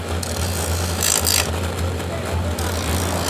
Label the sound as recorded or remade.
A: recorded